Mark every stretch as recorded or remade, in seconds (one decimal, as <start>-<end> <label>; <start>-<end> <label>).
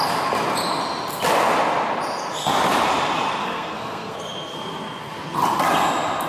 0.0-3.4 recorded; 3.4-4.2 remade; 4.2-6.3 recorded